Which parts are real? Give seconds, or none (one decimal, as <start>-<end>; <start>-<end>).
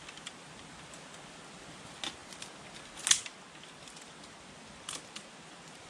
0.0-5.9